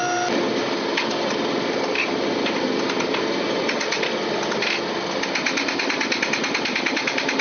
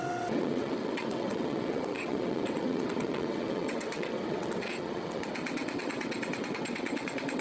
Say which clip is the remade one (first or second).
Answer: second